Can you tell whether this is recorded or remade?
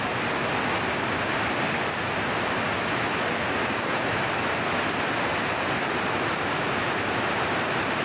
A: recorded